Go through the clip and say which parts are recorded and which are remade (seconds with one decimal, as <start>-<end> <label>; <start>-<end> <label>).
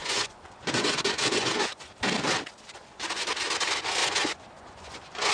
0.0-1.9 remade; 1.9-2.8 recorded; 2.8-3.3 remade; 3.3-4.0 recorded; 4.0-5.3 remade